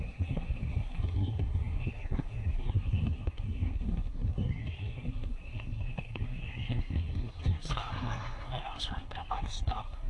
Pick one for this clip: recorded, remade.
remade